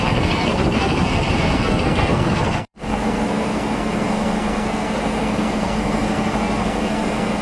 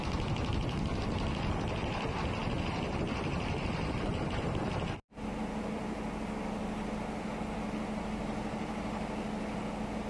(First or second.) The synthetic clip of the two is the first